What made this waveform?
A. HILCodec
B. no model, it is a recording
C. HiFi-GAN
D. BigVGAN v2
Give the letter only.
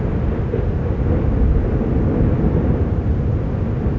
B